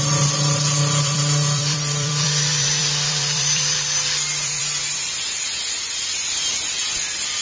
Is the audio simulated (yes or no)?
yes